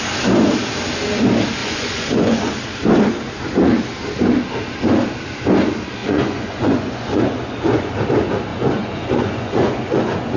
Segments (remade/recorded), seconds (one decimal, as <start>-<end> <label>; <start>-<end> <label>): 0.0-1.6 recorded; 1.6-2.5 remade; 2.5-6.0 recorded; 6.0-7.9 remade; 7.9-8.5 recorded; 8.5-10.4 remade